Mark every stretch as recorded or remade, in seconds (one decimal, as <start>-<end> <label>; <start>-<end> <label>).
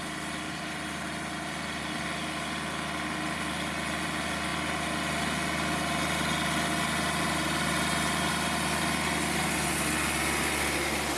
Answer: 0.0-11.2 recorded